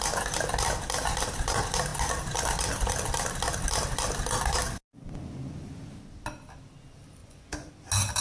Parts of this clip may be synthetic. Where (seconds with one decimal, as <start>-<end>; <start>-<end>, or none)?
7.2-7.7